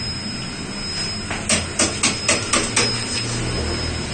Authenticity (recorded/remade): recorded